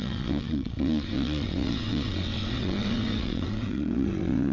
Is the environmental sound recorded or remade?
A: remade